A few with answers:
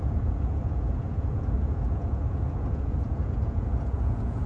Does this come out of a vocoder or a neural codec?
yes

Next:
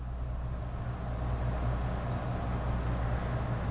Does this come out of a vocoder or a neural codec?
no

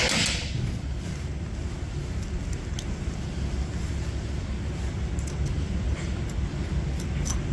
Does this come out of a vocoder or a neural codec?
no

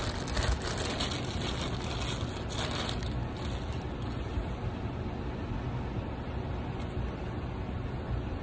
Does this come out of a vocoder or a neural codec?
no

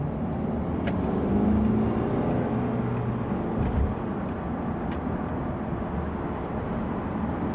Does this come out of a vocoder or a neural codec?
no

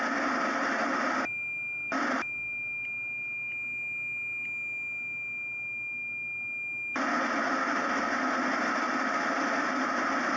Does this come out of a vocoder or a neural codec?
no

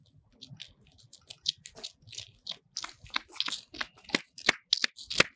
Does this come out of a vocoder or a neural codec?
no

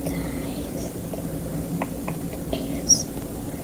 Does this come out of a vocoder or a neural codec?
no